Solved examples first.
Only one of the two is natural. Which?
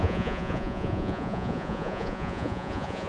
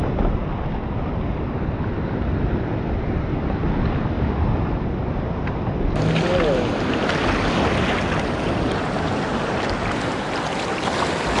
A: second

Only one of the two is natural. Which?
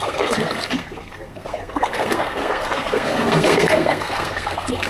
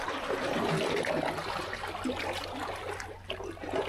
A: second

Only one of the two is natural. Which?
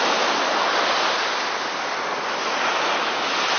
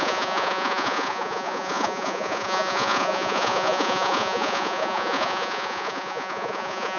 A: first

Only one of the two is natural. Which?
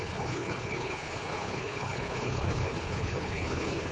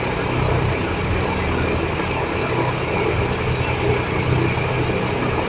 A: second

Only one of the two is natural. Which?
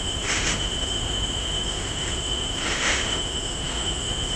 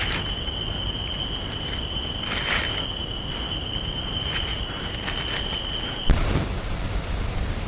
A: second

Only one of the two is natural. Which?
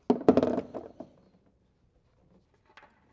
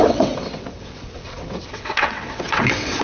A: first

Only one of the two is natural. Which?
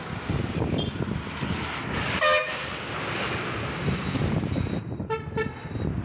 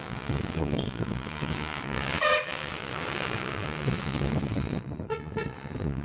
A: first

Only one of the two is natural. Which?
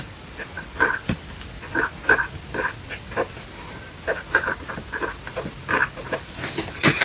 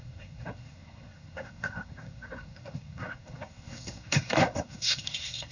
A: first